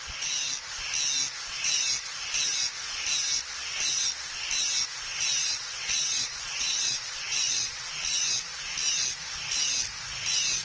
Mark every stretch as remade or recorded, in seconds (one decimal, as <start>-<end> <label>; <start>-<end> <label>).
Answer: 0.0-5.4 recorded; 5.4-7.9 remade; 7.9-10.6 recorded

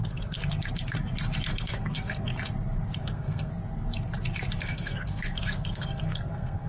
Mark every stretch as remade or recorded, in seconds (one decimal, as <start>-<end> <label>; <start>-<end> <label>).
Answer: 0.0-0.4 remade; 0.4-1.5 recorded; 1.5-2.3 remade; 2.3-3.0 recorded; 3.0-3.5 remade; 3.5-4.6 recorded; 4.6-6.7 remade

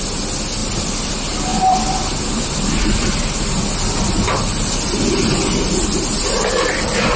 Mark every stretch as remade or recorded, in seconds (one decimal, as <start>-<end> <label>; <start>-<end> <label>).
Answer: 0.0-0.6 recorded; 0.6-1.1 remade; 1.1-1.5 recorded; 1.5-2.8 remade; 2.8-7.2 recorded